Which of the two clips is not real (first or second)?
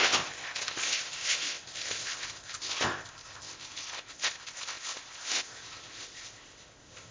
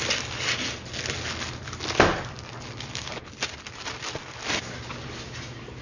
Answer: first